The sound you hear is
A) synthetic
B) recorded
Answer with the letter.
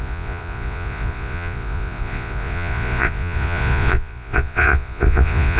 A